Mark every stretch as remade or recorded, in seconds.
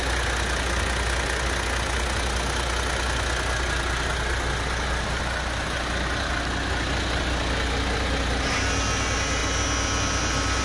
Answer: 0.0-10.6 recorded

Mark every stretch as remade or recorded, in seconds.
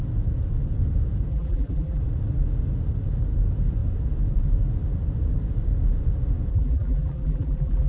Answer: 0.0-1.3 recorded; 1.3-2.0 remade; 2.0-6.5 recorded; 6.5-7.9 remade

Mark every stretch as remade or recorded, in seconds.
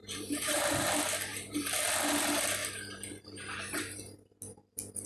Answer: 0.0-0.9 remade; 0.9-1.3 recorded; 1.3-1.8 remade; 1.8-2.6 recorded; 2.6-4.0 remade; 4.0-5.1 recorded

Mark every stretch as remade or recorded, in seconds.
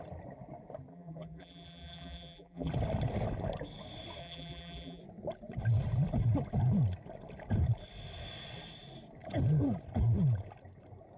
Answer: 0.0-0.9 recorded; 0.9-2.7 remade; 2.7-4.2 recorded; 4.2-5.0 remade; 5.0-11.2 recorded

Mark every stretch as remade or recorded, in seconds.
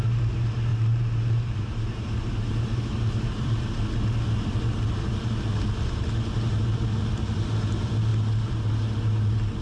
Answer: 0.0-0.7 recorded; 0.7-3.7 remade; 3.7-9.6 recorded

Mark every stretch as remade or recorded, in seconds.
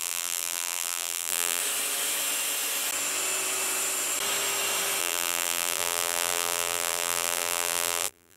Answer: 0.0-1.6 remade; 1.6-5.0 recorded; 5.0-8.4 remade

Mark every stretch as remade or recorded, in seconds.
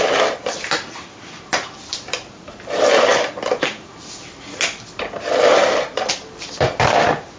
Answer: 0.0-3.1 remade; 3.1-5.9 recorded; 5.9-7.4 remade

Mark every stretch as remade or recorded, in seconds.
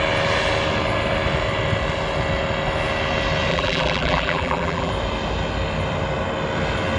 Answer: 0.0-3.5 recorded; 3.5-4.9 remade; 4.9-7.0 recorded